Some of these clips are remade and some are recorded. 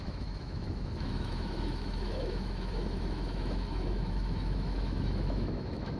remade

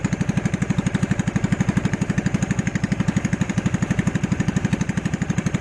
remade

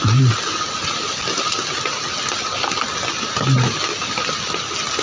recorded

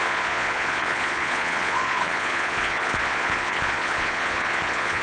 remade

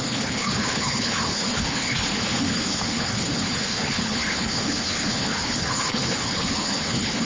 remade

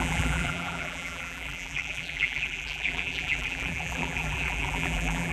remade